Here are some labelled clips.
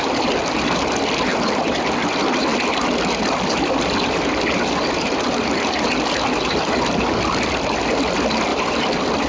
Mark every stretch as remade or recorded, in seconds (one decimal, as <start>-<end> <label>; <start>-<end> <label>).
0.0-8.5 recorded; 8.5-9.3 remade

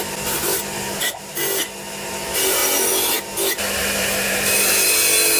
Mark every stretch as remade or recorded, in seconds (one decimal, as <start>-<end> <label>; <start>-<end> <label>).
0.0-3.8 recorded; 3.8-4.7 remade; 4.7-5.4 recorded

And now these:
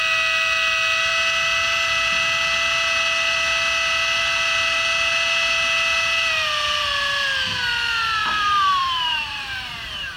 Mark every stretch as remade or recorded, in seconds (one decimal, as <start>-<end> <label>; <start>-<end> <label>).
0.0-8.2 recorded; 8.2-10.2 remade

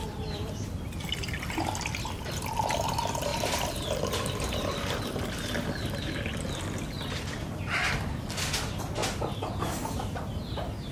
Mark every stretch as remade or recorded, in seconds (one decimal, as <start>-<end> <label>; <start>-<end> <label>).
0.0-2.7 remade; 2.7-10.9 recorded